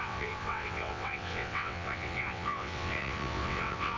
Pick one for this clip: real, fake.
fake